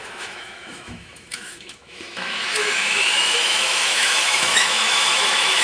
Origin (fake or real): fake